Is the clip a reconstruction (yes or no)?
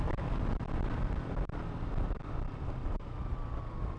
no